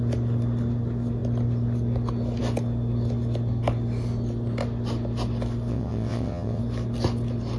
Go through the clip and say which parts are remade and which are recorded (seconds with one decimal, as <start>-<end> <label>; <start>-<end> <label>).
0.0-5.7 recorded; 5.7-6.6 remade; 6.6-7.6 recorded